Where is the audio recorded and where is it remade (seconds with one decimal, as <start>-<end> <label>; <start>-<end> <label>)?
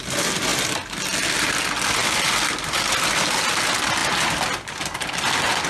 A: 0.0-5.7 recorded